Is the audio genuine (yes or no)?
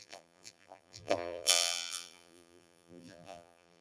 no